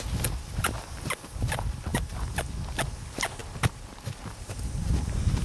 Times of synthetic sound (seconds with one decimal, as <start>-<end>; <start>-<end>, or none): none